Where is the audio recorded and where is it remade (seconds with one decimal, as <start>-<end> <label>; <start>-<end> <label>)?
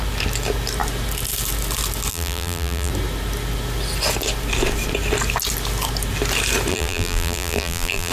0.0-2.1 recorded; 2.1-2.9 remade; 2.9-6.7 recorded; 6.7-8.1 remade